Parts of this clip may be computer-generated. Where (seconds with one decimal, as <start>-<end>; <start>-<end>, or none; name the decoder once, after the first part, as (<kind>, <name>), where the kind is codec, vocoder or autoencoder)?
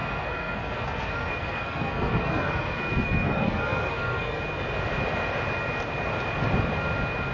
0.0-4.4 (codec, SNAC)